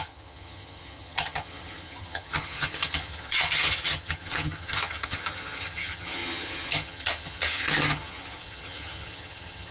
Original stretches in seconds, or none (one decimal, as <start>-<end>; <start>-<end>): none